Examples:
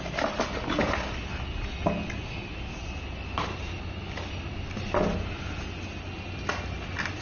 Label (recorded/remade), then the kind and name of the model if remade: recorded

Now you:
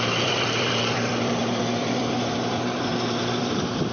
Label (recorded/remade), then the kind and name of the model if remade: remade, vocoder, BigVGAN v2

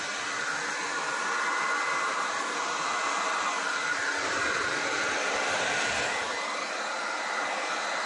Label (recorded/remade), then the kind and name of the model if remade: remade, vocoder, BigVGAN v2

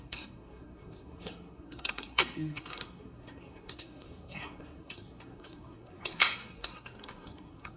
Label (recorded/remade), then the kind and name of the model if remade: remade, codec, SNAC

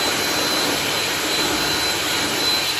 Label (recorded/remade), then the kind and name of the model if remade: remade, vocoder, BigVGAN v2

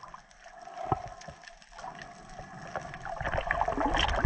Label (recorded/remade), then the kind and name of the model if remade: recorded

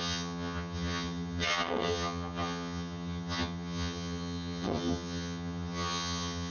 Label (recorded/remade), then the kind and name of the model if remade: remade, vocoder, HiFi-GAN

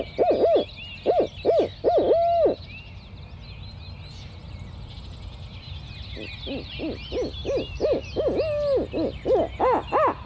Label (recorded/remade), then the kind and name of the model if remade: recorded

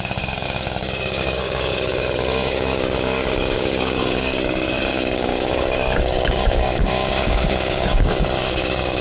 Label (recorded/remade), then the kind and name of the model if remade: remade, codec, DAC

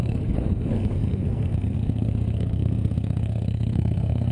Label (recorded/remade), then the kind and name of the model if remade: remade, codec, SNAC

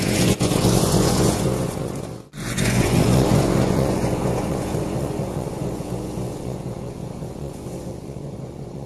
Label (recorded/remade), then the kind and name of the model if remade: remade, vocoder, Vocos